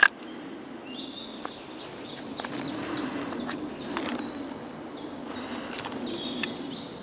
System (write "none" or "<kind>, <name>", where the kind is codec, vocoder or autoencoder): none